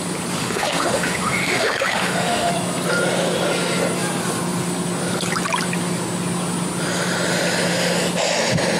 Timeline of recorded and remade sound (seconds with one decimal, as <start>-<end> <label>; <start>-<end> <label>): 0.0-0.4 recorded; 0.4-2.5 remade; 2.5-8.8 recorded